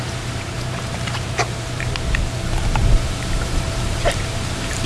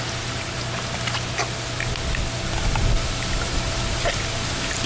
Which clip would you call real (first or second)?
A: second